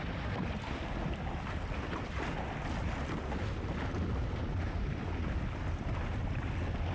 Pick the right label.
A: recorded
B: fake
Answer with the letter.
A